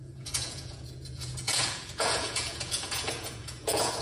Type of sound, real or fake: fake